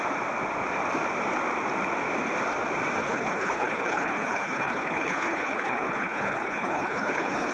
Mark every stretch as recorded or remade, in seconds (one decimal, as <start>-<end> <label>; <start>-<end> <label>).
0.0-3.0 recorded; 3.0-7.5 remade

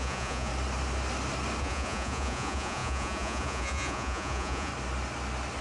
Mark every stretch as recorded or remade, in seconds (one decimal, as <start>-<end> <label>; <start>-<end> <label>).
0.0-0.5 remade; 0.5-1.6 recorded; 1.6-4.7 remade; 4.7-5.6 recorded

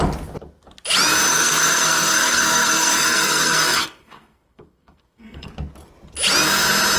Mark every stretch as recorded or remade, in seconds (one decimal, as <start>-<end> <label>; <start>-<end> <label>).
0.0-1.3 recorded; 1.3-5.5 remade; 5.5-7.0 recorded

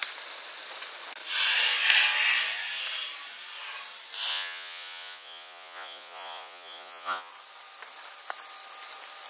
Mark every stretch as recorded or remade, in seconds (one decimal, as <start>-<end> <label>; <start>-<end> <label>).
0.0-4.3 recorded; 4.3-7.3 remade; 7.3-9.3 recorded